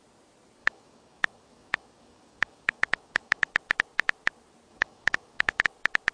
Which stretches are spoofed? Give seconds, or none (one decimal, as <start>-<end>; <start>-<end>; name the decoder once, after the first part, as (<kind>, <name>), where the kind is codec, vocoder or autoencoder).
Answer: 0.6-3.5 (codec, DAC); 4.7-5.6